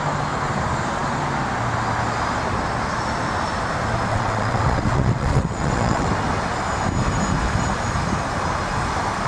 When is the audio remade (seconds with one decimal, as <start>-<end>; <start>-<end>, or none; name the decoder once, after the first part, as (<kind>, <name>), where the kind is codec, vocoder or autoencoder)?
4.1-6.1 (vocoder, WaveNeXt)